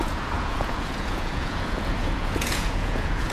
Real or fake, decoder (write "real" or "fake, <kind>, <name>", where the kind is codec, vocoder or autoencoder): fake, vocoder, Vocos